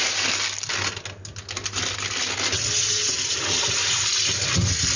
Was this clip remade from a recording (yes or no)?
no